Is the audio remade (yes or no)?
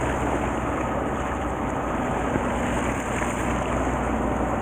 no